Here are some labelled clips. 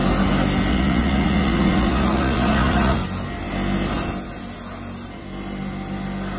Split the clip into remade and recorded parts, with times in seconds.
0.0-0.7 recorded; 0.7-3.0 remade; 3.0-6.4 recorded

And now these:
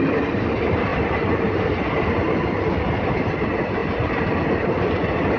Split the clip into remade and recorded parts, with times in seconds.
0.0-5.4 recorded

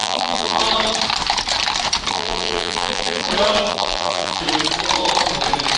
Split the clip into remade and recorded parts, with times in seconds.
0.0-0.6 remade; 0.6-2.1 recorded; 2.1-3.3 remade; 3.3-3.7 recorded; 3.7-4.4 remade; 4.4-5.8 recorded

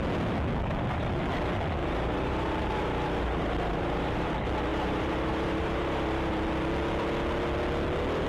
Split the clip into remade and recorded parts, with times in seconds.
0.0-1.8 recorded; 1.8-4.3 remade; 4.3-4.7 recorded; 4.7-6.3 remade; 6.3-8.3 recorded

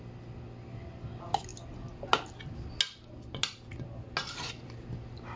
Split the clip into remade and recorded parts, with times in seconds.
0.0-1.5 remade; 1.5-4.5 recorded; 4.5-5.4 remade